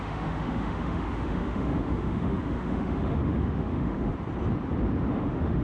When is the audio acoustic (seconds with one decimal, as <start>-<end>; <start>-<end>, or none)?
4.1-5.1